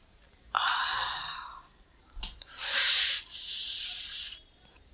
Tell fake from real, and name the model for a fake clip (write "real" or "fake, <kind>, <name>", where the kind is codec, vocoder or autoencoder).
fake, vocoder, BigVGAN v2